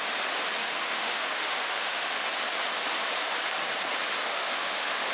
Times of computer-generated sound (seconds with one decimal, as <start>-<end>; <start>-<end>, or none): 0.6-2.2; 4.3-5.1